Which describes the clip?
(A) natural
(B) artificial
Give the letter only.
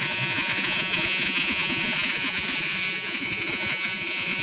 B